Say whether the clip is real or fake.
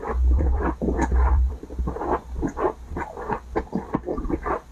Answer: fake